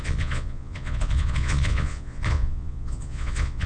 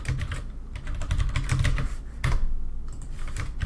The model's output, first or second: first